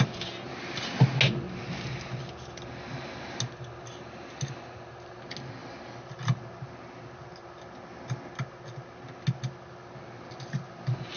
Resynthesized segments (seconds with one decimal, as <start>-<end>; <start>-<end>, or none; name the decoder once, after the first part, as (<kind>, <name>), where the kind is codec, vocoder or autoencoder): 5.6-6.4 (vocoder, BigVGAN v2)

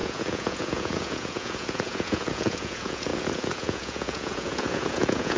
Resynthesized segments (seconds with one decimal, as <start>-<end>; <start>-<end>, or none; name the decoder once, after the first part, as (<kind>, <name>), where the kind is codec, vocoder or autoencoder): 0.0-5.4 (vocoder, Vocos)

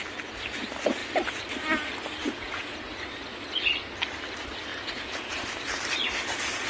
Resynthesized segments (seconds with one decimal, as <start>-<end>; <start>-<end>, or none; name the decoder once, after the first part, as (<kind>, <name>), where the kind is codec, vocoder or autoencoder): 2.2-2.9 (vocoder, Vocos); 4.7-5.4